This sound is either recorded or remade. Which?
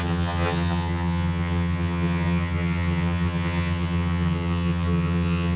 remade